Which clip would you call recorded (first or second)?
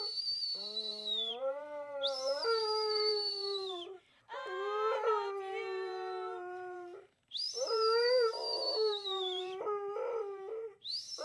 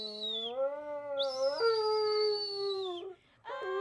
second